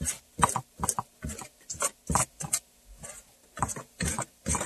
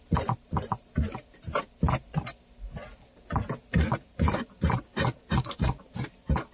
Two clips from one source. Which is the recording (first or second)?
first